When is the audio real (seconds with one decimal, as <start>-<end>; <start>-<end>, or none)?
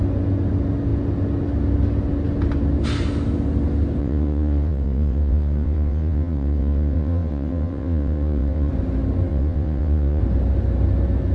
0.0-4.0; 8.7-9.3; 10.2-11.3